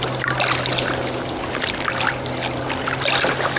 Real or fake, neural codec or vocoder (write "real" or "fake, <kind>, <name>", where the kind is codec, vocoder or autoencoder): real